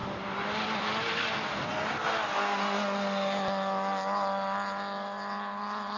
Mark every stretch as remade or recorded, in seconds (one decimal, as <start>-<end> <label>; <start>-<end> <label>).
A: 0.0-6.0 recorded